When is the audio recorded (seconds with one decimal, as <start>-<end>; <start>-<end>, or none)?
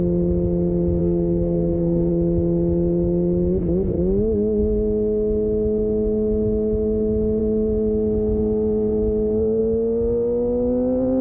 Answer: 0.0-1.0; 2.1-11.2